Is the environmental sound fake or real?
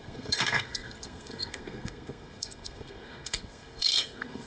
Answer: fake